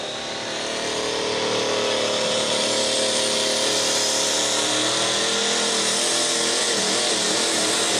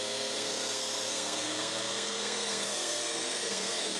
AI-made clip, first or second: second